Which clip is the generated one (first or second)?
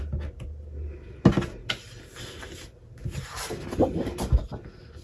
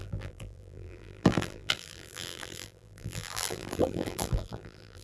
second